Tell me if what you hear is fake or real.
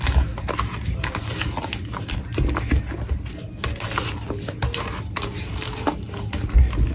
real